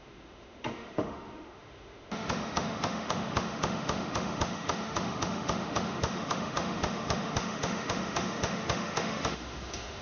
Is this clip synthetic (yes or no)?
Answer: yes